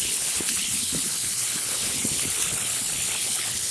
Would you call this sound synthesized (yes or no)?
yes